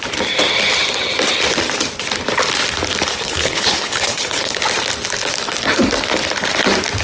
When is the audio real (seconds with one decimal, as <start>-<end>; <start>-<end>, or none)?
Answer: 0.0-3.1; 4.6-7.0